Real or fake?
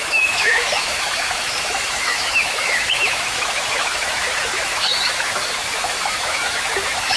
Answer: fake